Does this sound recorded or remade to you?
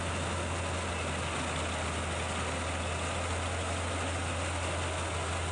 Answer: recorded